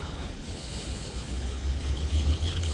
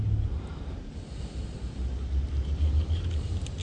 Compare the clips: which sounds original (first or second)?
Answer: second